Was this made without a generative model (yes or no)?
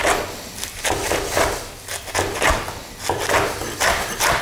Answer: yes